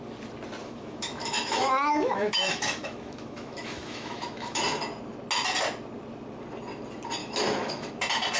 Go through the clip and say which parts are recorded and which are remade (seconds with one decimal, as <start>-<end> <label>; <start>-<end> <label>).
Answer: 0.0-0.6 recorded; 0.6-4.6 remade; 4.6-7.2 recorded; 7.2-7.9 remade; 7.9-8.4 recorded